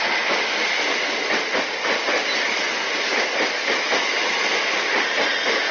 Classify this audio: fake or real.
real